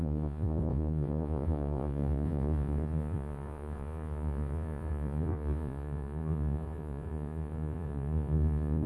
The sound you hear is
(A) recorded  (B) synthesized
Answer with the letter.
B